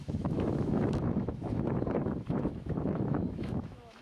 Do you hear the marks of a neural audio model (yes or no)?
yes